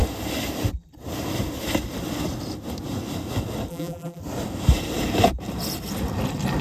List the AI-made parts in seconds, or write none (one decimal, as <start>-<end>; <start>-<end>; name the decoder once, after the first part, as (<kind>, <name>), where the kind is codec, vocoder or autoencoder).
3.7-4.2 (vocoder, BigVGAN v2)